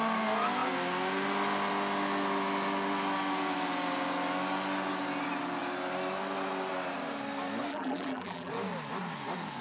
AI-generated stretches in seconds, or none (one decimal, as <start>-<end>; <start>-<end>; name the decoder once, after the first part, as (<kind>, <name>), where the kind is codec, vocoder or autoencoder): 7.7-8.5 (vocoder, BigVGAN v2)